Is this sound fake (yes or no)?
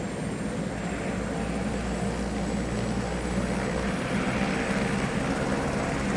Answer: no